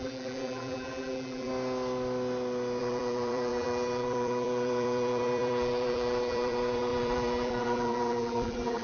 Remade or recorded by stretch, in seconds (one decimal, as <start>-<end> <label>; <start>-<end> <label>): 0.0-1.5 remade; 1.5-2.8 recorded; 2.8-8.8 remade